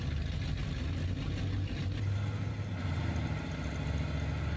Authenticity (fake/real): real